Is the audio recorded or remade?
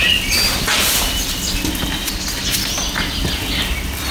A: recorded